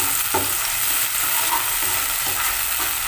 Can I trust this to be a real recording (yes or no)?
yes